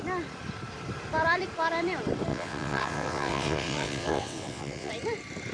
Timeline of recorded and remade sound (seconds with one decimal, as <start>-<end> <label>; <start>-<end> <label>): 0.0-2.3 recorded; 2.3-4.9 remade; 4.9-5.5 recorded

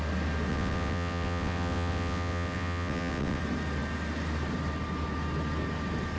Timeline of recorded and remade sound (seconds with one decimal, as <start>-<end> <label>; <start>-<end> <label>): 0.0-0.5 recorded; 0.5-3.4 remade; 3.4-6.2 recorded

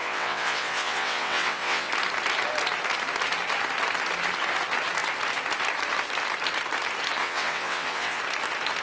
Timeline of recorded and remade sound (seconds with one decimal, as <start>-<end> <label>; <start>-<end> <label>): 0.0-1.9 remade; 1.9-7.2 recorded; 7.2-8.2 remade; 8.2-8.8 recorded